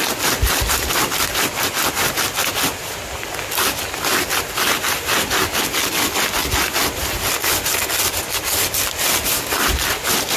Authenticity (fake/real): real